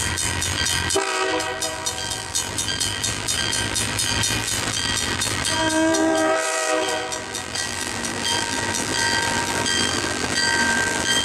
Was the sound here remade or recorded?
remade